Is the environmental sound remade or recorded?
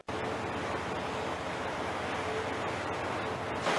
recorded